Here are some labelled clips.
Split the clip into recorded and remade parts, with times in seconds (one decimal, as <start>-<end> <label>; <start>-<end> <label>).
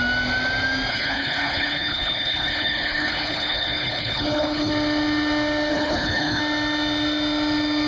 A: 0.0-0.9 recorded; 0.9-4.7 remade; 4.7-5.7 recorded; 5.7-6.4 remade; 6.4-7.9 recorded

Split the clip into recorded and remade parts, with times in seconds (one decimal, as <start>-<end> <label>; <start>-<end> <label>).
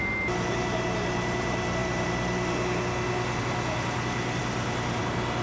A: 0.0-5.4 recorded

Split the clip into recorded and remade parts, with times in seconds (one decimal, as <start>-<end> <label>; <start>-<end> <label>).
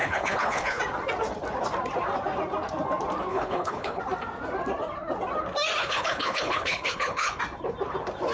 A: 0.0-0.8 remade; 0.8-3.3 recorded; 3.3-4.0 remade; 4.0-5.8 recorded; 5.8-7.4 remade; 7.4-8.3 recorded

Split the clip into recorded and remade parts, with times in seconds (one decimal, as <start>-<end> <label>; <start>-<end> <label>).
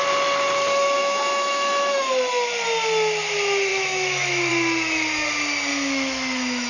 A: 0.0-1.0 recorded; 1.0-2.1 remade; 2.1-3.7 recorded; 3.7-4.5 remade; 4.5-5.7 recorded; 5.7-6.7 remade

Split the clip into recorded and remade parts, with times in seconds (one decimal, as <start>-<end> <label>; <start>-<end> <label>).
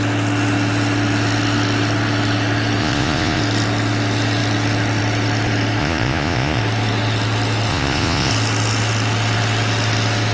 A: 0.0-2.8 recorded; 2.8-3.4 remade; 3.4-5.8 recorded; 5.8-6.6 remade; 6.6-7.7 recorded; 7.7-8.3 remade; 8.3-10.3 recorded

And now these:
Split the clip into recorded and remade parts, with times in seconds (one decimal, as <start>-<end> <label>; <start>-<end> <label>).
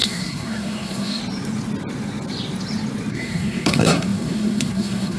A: 0.0-1.2 remade; 1.2-3.1 recorded; 3.1-5.2 remade